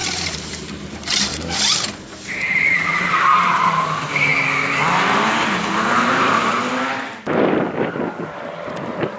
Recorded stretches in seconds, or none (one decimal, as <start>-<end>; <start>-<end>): 4.3-8.2